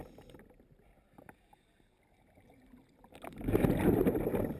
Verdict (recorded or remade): recorded